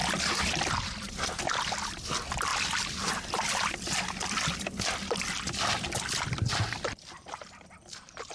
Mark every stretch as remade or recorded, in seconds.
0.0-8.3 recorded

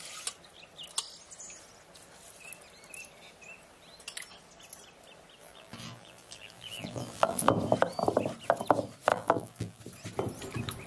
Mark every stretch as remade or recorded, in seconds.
0.0-5.4 recorded; 5.4-7.5 remade; 7.5-9.1 recorded; 9.1-9.8 remade; 9.8-10.9 recorded